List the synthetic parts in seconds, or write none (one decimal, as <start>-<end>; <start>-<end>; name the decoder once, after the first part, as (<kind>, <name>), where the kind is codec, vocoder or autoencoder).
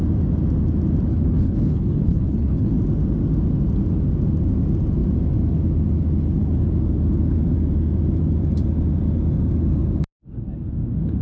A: 1.1-2.7 (codec, HILCodec)